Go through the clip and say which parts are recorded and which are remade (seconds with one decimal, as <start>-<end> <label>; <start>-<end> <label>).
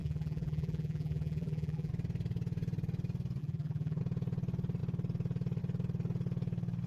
0.0-1.9 remade; 1.9-3.4 recorded; 3.4-4.0 remade; 4.0-6.9 recorded